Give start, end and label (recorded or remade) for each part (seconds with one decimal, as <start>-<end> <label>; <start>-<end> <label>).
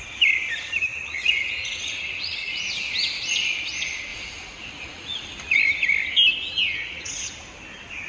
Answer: 0.0-0.9 recorded; 0.9-2.7 remade; 2.7-4.1 recorded; 4.1-5.6 remade; 5.6-6.8 recorded; 6.8-7.3 remade; 7.3-8.1 recorded